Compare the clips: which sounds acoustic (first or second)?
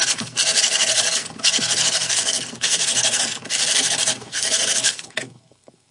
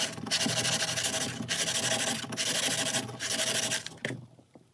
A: second